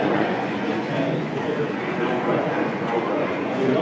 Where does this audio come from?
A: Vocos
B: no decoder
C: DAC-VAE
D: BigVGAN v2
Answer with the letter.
A